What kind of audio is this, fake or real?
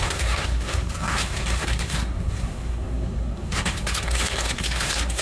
fake